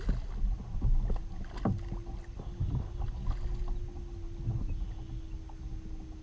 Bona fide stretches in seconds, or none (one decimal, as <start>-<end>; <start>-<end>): 0.0-6.2

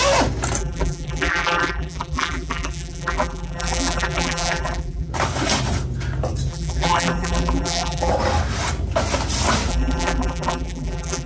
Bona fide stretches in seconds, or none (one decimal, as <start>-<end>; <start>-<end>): 0.0-0.6; 5.1-6.5; 8.1-9.7